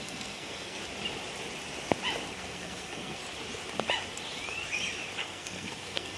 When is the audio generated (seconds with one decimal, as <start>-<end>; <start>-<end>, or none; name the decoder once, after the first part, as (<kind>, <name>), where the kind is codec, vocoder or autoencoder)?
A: 0.0-0.8 (codec, SNAC); 2.3-3.2; 5.2-6.2